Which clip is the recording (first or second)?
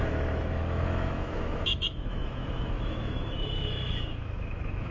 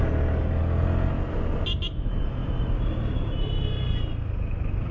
second